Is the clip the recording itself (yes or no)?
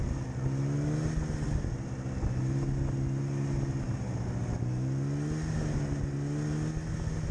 yes